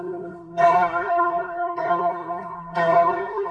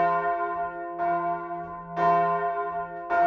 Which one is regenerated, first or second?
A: first